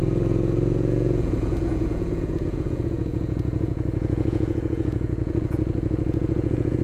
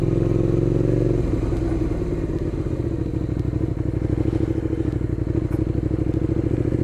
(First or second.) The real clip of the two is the second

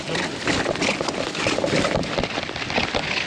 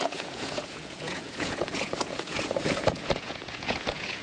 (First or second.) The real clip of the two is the first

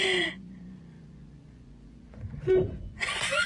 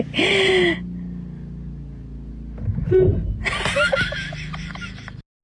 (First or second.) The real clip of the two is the second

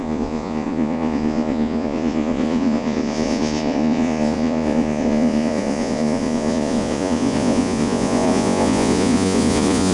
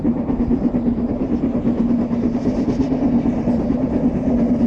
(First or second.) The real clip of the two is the second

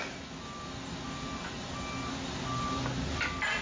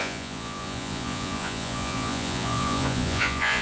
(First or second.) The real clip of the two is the first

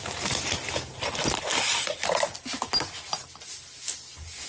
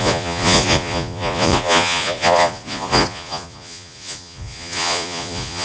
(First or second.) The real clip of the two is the first